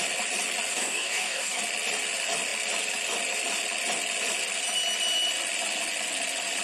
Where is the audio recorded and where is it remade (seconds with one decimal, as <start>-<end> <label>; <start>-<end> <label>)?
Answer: 0.0-0.7 recorded; 0.7-1.6 remade; 1.6-6.6 recorded